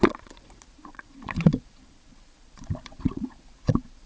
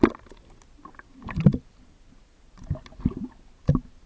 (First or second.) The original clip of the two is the second